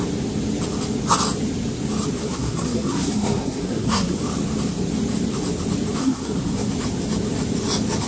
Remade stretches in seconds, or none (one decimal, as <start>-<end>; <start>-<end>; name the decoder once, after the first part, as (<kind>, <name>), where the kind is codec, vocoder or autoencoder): 2.2-4.2 (codec, SNAC); 6.0-6.7